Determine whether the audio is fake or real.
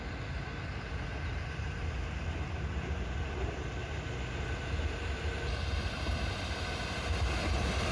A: real